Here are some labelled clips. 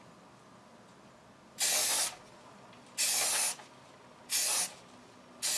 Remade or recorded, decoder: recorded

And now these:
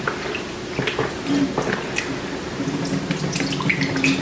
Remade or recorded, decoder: recorded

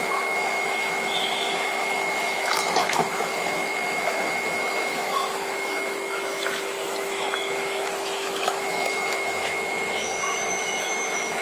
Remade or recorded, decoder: remade, autoencoder, DAC-VAE